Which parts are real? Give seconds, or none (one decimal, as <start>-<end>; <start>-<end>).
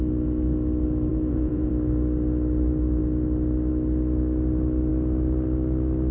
0.0-1.1; 1.7-6.1